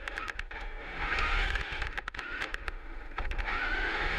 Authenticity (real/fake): fake